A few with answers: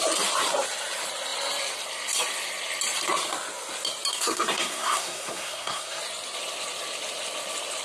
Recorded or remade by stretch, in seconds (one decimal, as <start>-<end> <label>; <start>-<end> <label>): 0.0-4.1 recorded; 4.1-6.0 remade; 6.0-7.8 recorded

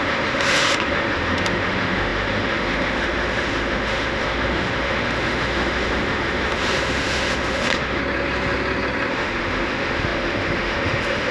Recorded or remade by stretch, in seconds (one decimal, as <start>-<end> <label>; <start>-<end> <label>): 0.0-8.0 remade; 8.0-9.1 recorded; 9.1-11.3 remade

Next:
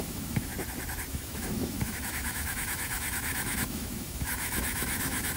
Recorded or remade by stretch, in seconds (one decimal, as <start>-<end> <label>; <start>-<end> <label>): 0.0-0.5 remade; 0.5-1.1 recorded; 1.1-5.4 remade